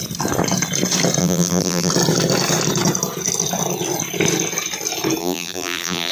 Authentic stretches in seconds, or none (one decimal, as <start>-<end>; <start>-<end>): 0.0-1.2; 1.9-5.2

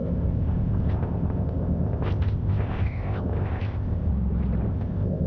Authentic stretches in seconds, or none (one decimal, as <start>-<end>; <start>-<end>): 4.1-4.7